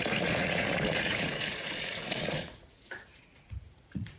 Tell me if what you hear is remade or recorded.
remade